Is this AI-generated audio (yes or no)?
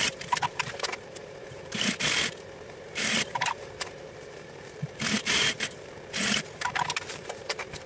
yes